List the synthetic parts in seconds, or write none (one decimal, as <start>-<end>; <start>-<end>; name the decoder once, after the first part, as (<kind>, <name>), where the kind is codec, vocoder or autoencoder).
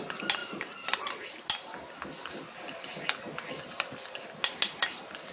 none